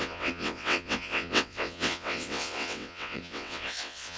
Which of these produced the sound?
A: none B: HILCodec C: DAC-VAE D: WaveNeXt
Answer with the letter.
D